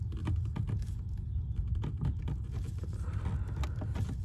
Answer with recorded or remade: recorded